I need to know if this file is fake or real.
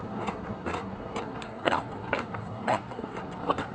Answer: fake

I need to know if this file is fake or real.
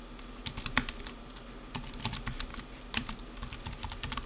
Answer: real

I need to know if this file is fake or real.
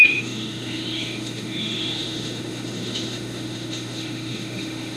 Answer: fake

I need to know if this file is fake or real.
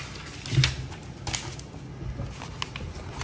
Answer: real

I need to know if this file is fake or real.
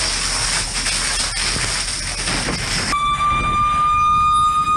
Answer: real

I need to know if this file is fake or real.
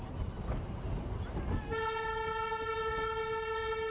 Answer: real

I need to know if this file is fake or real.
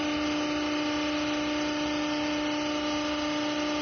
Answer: real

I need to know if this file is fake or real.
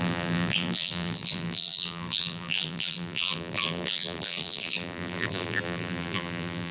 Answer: fake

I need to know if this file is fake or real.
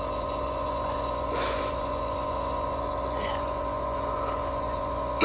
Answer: fake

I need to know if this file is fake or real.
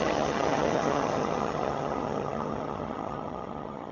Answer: fake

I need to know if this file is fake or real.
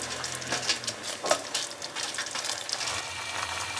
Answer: real